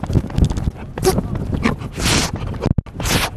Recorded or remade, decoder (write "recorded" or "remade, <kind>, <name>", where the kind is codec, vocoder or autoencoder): recorded